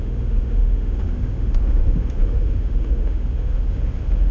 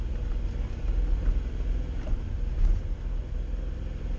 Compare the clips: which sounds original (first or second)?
second